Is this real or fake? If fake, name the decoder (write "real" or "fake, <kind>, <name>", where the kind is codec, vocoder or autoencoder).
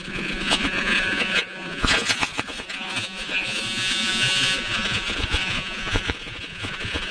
fake, vocoder, Vocos